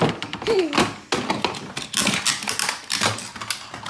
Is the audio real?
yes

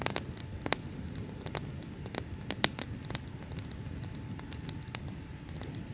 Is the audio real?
yes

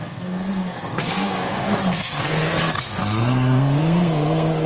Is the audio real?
no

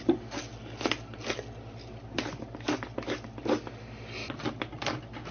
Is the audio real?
yes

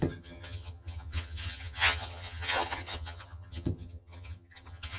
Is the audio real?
no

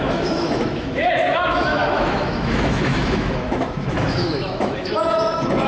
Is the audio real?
no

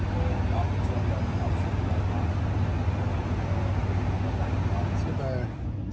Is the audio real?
yes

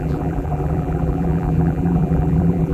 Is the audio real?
no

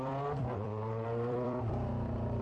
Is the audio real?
no